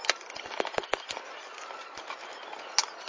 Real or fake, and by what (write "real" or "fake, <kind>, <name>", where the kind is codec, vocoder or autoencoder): real